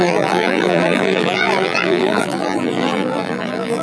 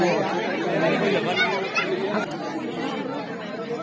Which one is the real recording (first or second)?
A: second